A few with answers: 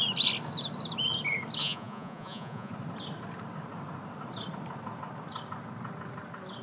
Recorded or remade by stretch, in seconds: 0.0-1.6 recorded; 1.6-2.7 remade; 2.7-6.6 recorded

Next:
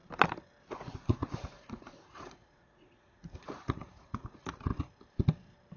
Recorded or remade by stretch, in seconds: 0.0-0.7 recorded; 0.7-4.7 remade; 4.7-5.8 recorded